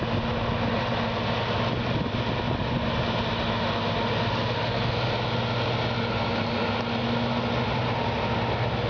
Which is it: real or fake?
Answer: real